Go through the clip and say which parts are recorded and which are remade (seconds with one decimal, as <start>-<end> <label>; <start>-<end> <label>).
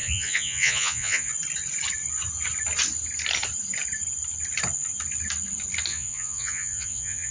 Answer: 0.0-1.3 remade; 1.3-5.9 recorded; 5.9-7.3 remade